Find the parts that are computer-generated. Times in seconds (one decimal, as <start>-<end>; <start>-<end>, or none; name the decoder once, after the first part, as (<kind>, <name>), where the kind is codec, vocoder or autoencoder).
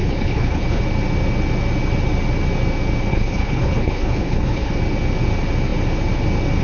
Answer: 0.0-0.8 (codec, HILCodec); 3.1-4.7